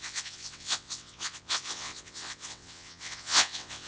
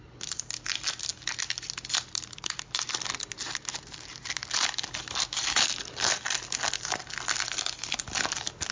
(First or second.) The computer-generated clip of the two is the first